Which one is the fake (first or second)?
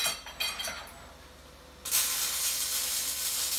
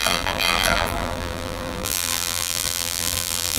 second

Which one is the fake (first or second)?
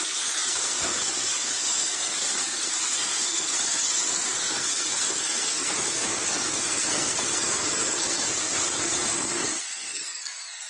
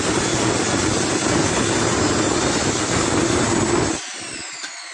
first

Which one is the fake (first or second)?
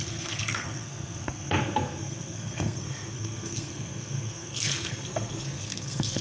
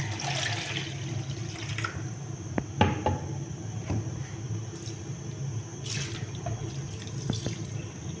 first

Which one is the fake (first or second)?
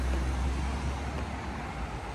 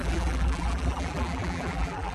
second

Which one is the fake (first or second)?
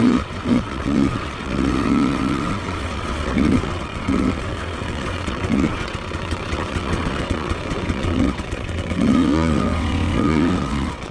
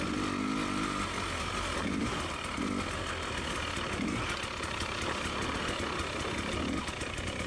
first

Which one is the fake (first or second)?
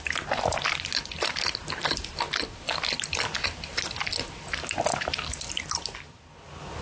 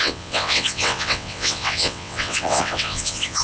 second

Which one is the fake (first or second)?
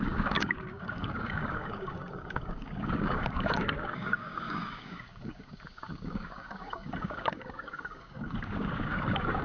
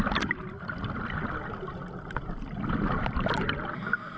first